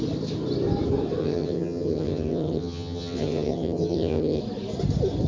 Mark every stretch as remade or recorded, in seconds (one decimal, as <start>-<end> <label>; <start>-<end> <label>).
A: 0.0-1.2 recorded; 1.2-4.4 remade; 4.4-5.3 recorded